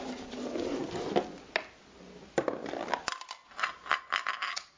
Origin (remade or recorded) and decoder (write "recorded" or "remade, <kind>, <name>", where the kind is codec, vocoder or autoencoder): recorded